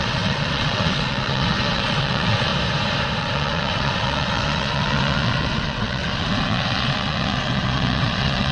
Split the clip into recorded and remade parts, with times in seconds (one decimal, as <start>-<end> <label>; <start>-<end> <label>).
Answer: 0.0-2.5 remade; 2.5-3.2 recorded; 3.2-8.5 remade